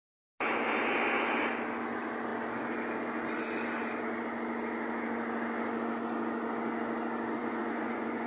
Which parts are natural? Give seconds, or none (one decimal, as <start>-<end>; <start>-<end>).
0.0-7.4

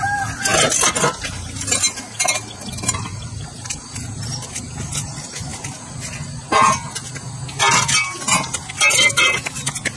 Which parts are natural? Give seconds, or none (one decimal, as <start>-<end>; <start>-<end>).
0.0-10.0

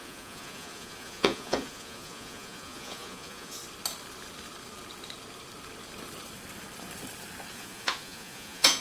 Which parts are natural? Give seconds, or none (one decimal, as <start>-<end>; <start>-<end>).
3.6-7.5

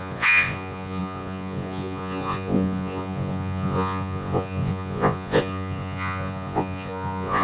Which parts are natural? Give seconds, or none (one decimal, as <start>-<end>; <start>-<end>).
none

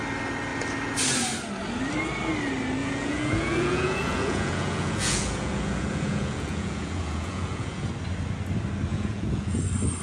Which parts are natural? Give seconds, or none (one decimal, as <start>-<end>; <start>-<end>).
0.0-2.8; 7.9-8.9; 9.6-10.0

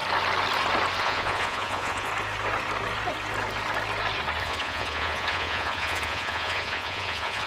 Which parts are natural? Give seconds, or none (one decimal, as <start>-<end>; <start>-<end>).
0.0-1.0; 2.1-4.4

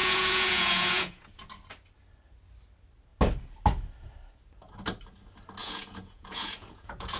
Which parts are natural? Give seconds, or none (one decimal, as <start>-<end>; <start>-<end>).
1.3-5.6